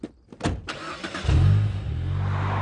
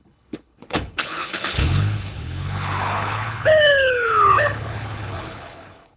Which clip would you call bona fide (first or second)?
first